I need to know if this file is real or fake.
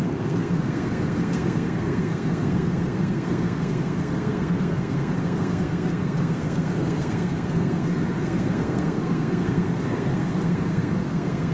fake